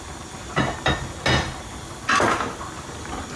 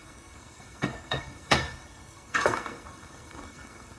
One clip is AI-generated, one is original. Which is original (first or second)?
first